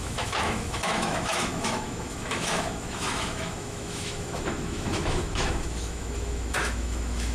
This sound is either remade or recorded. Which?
remade